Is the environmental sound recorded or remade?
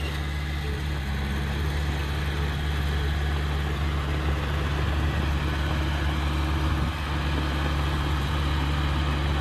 recorded